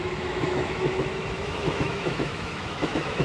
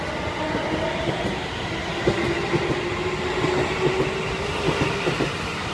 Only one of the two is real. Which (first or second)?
second